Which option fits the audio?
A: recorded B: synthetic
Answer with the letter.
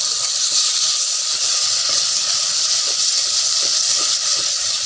B